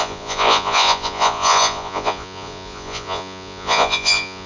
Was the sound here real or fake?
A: fake